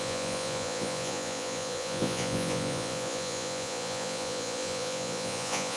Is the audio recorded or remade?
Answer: remade